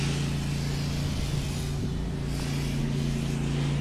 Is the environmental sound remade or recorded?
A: recorded